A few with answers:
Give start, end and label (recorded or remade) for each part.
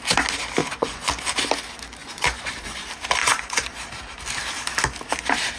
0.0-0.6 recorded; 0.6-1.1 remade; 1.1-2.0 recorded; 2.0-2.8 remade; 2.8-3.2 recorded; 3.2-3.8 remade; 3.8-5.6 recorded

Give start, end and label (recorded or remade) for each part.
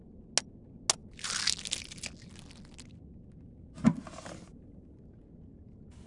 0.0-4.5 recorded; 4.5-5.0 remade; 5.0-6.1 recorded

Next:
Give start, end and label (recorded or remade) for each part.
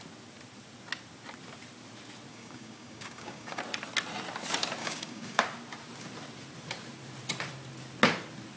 0.0-2.3 recorded; 2.3-3.6 remade; 3.6-4.8 recorded; 4.8-5.4 remade; 5.4-8.6 recorded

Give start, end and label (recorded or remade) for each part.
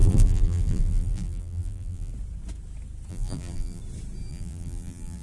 0.0-2.1 remade; 2.1-3.1 recorded; 3.1-3.8 remade; 3.8-4.3 recorded; 4.3-5.2 remade